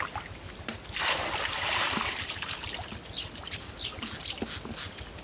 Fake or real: real